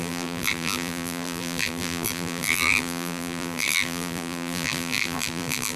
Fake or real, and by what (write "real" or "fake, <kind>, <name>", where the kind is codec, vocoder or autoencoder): fake, vocoder, BigVGAN v2